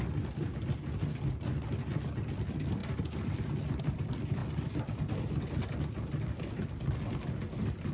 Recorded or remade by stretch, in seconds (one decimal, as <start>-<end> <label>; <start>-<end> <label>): 0.0-7.9 recorded